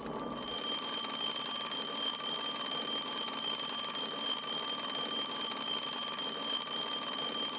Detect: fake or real real